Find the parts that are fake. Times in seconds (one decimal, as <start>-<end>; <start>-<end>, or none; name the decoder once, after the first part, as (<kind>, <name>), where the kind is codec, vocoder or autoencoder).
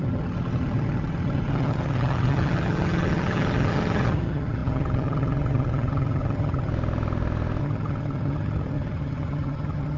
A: 0.0-6.7 (vocoder, HiFi-GAN); 7.6-10.0